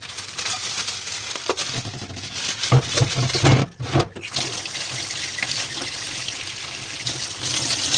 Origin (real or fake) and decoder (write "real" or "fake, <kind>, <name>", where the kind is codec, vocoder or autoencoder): real